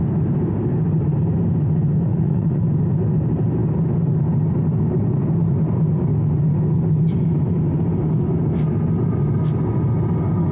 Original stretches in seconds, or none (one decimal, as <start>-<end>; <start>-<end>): 0.0-2.1; 2.6-10.5